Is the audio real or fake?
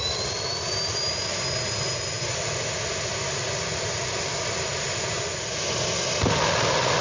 real